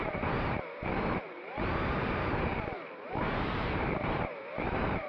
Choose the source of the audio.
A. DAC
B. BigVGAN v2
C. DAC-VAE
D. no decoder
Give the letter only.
B